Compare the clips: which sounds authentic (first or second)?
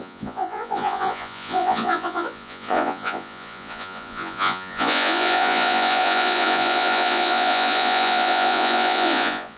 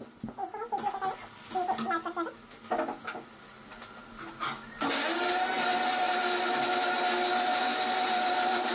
second